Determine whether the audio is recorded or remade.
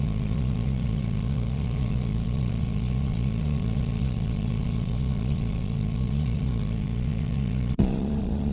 remade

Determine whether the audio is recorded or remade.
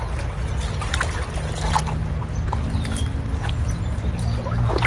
recorded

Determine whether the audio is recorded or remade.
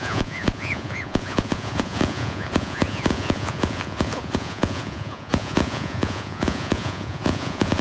remade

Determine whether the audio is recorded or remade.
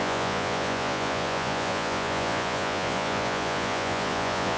remade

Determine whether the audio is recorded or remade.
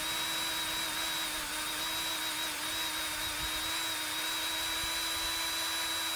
recorded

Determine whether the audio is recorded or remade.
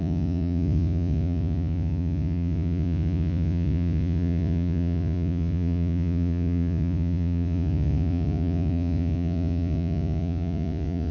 remade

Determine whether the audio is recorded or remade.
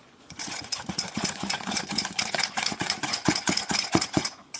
remade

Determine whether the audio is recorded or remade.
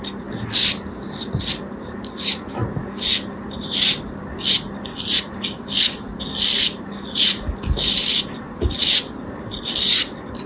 recorded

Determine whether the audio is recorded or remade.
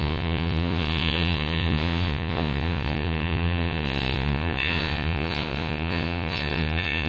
remade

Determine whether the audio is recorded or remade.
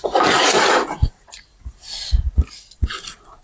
remade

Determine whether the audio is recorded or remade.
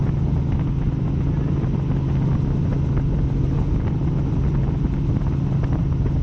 recorded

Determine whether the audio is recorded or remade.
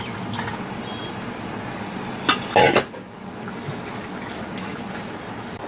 recorded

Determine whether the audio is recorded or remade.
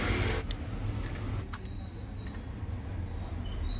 recorded